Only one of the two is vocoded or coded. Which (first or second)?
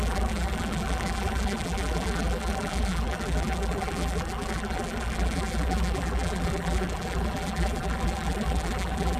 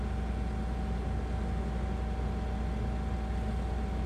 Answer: first